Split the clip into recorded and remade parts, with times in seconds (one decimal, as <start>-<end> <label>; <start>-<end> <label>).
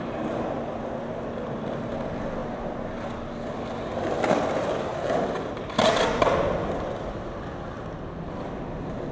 0.0-9.1 recorded